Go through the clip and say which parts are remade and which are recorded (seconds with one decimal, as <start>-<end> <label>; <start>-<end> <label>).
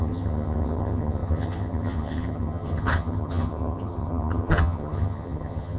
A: 0.0-5.8 remade